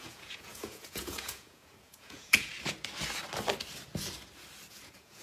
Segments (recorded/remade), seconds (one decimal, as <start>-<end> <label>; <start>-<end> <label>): 0.0-2.5 remade; 2.5-4.7 recorded; 4.7-5.2 remade